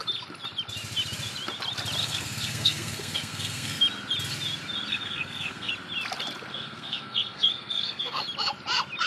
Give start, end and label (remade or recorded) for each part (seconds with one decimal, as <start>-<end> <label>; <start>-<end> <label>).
0.0-2.0 recorded; 2.0-3.8 remade; 3.8-4.9 recorded; 4.9-5.7 remade; 5.7-6.5 recorded; 6.5-8.2 remade; 8.2-9.1 recorded